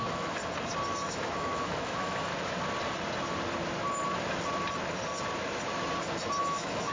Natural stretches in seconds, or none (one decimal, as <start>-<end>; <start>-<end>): 0.4-1.1; 2.3-6.4